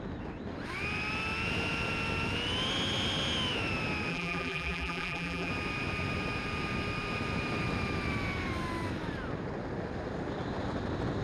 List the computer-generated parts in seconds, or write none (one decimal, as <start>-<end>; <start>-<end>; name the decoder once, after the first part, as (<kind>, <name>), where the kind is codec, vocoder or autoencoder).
4.1-5.5 (vocoder, BigVGAN v2)